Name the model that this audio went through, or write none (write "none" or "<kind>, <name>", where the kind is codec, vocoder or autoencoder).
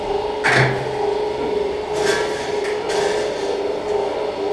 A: none